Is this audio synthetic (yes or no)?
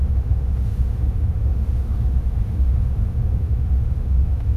yes